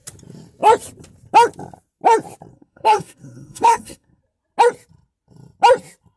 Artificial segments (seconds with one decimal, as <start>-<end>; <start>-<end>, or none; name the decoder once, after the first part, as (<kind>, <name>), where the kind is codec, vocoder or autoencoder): 2.5-4.2 (codec, SNAC)

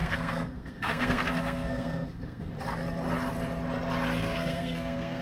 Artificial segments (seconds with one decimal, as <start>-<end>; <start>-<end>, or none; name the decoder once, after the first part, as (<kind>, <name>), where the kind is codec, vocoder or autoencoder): 0.0-2.5 (codec, SNAC); 4.2-5.2

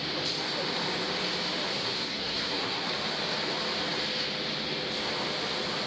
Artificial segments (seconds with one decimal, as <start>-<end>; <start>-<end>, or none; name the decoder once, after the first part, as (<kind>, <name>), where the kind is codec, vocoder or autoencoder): 1.7-2.9 (codec, SNAC)

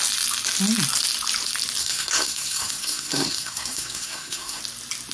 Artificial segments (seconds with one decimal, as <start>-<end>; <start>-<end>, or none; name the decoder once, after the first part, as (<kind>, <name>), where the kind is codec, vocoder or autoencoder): 1.8-4.6 (codec, SNAC)

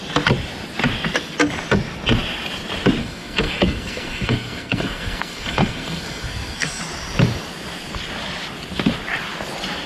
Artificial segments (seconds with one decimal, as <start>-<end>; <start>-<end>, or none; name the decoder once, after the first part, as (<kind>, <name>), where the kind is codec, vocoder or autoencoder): 3.0-6.8 (codec, SNAC)